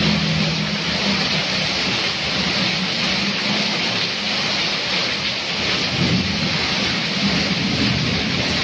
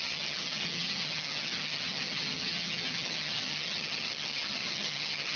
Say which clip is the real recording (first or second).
first